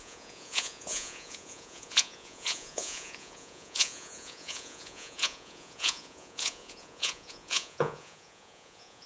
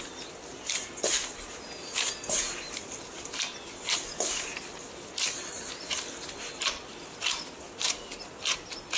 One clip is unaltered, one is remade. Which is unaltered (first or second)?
second